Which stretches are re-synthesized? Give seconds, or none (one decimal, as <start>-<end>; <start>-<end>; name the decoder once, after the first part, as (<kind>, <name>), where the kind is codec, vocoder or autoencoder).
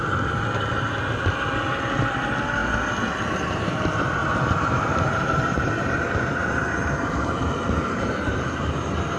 4.2-9.2 (vocoder, BigVGAN v2)